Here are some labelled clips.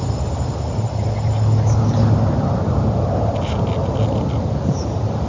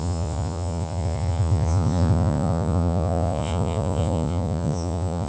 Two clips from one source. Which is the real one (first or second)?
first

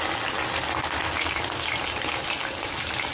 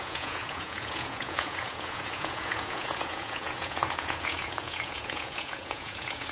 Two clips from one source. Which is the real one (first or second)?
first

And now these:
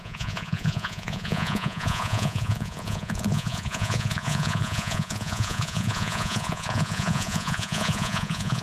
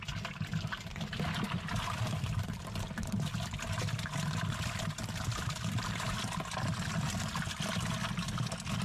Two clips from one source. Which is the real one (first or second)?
second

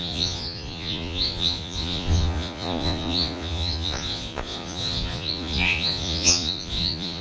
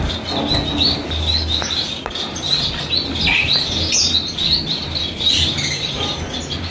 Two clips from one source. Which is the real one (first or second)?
second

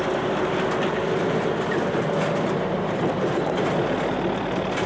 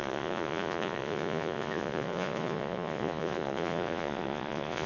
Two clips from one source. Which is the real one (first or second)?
first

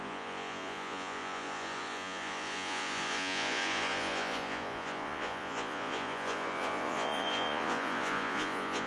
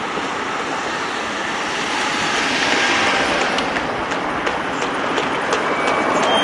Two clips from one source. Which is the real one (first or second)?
second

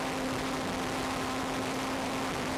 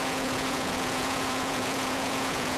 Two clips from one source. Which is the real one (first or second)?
first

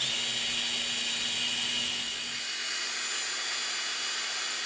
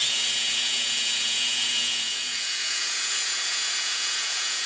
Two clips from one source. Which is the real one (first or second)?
first